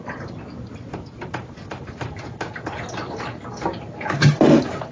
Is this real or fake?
real